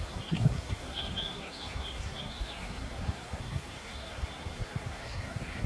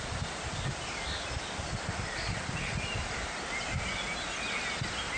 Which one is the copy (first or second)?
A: first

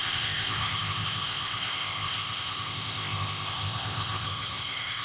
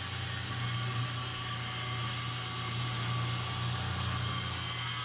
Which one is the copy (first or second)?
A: first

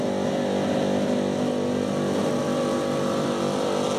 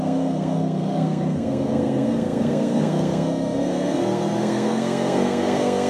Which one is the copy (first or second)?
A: second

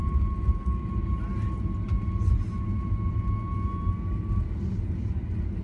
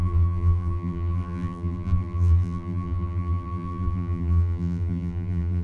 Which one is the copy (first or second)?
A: second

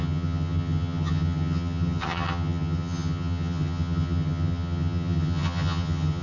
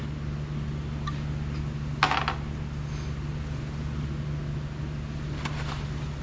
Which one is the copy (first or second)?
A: first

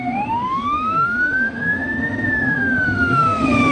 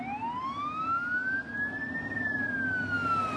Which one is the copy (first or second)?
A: first